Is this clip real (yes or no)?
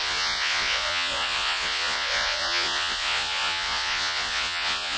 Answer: no